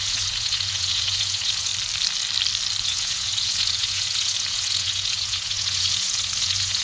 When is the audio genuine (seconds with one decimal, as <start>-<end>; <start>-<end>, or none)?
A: 1.7-2.8